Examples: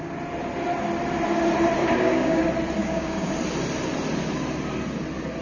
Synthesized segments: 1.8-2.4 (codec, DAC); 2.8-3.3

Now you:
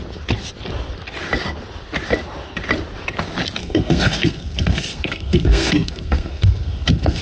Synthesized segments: 3.6-7.2 (codec, SNAC)